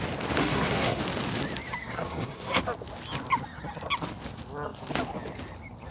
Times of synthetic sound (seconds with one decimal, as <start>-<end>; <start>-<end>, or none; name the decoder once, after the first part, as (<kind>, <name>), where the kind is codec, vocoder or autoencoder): 0.4-1.0 (codec, SNAC); 1.8-2.6